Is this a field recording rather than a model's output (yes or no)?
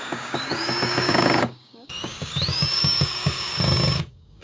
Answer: no